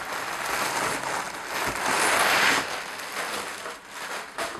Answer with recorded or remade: recorded